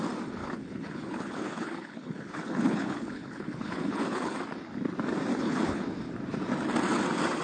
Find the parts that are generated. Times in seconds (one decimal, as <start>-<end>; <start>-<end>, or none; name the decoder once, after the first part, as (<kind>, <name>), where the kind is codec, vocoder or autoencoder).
0.4-4.3 (codec, HILCodec); 5.3-5.8